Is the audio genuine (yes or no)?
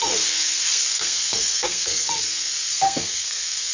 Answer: no